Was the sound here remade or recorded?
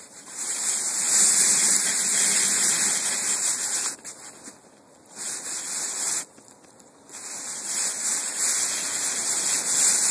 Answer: recorded